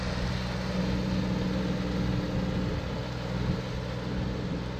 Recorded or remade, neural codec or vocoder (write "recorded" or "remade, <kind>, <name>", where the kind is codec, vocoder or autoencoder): recorded